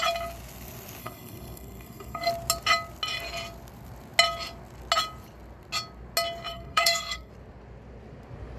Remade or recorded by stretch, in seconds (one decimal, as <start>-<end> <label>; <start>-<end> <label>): 0.0-1.0 recorded; 1.0-2.3 remade; 2.3-6.5 recorded; 6.5-7.3 remade; 7.3-8.6 recorded